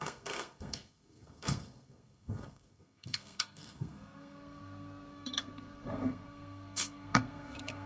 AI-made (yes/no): yes